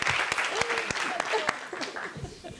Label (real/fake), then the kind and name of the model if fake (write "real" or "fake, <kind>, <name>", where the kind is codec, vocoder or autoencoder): real